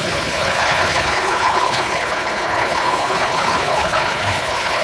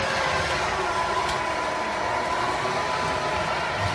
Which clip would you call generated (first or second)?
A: first